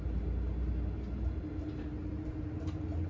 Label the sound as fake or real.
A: real